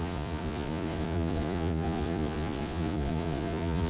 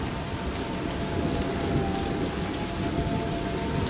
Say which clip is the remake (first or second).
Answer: first